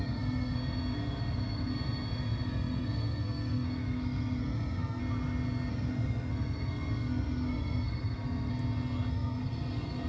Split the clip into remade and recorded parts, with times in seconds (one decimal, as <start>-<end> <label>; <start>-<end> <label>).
0.0-5.0 remade; 5.0-5.7 recorded; 5.7-8.5 remade; 8.5-9.1 recorded; 9.1-10.1 remade